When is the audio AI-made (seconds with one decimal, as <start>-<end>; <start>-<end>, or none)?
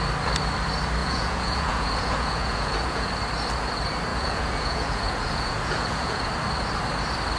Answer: 1.0-3.1; 4.1-6.3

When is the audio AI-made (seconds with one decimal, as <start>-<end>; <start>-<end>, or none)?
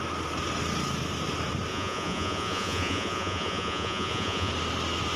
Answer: 1.7-4.5